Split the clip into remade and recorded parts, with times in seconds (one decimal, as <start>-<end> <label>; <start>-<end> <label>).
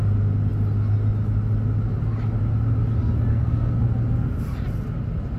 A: 0.0-3.3 recorded; 3.3-3.8 remade; 3.8-5.4 recorded